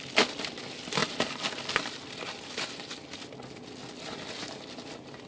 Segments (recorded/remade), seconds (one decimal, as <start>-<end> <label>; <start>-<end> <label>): 0.0-5.3 recorded